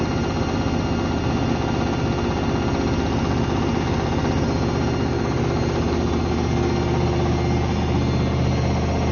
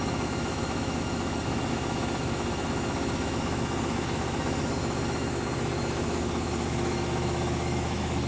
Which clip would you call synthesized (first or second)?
second